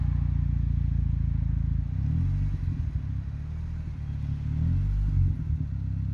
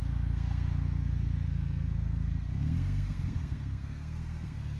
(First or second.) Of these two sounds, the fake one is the second